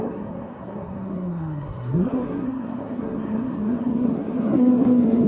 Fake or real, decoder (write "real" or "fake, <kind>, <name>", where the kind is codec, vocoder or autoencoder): fake, codec, SNAC